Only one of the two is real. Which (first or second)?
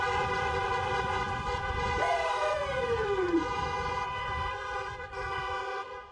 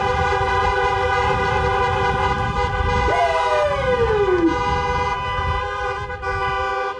second